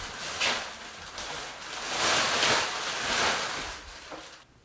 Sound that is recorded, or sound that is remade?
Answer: recorded